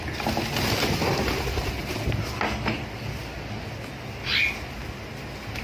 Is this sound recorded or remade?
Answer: recorded